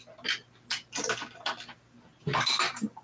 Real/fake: real